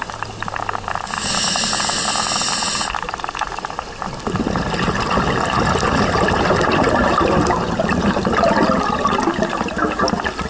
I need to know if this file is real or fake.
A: real